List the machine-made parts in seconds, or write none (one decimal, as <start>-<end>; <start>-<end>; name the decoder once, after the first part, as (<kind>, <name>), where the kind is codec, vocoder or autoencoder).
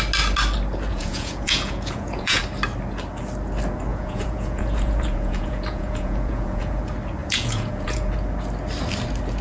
0.9-2.4 (vocoder, Vocos); 3.9-6.8; 7.2-8.1